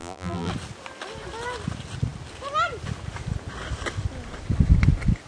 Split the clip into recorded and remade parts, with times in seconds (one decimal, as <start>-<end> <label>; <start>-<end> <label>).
0.0-0.5 remade; 0.5-5.3 recorded